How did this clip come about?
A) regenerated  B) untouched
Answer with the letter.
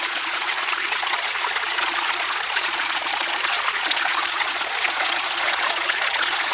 A